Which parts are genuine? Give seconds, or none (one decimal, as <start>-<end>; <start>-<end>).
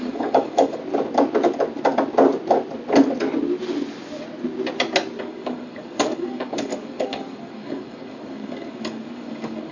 0.8-5.2